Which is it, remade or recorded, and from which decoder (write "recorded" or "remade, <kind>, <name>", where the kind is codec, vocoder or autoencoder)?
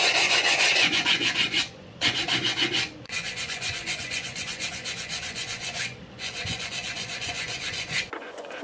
remade, vocoder, Vocos